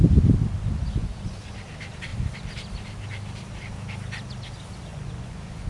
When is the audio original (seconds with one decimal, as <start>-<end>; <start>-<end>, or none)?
0.0-1.0; 1.5-4.9